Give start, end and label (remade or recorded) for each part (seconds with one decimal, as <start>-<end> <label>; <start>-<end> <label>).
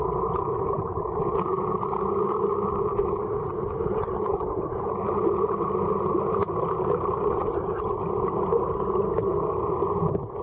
0.0-10.4 recorded